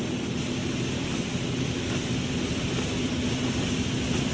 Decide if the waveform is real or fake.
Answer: real